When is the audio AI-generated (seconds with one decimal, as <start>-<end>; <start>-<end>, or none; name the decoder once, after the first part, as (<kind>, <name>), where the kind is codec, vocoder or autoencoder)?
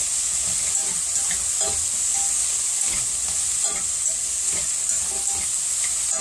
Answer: none